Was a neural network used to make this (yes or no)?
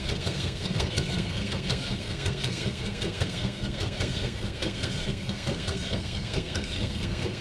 yes